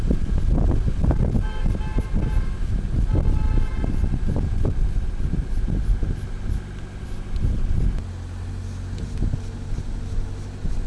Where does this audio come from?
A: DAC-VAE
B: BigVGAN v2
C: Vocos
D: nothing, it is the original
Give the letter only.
D